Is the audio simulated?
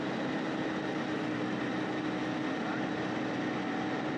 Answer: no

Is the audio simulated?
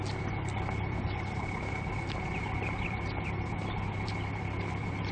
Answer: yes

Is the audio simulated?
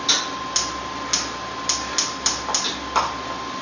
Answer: no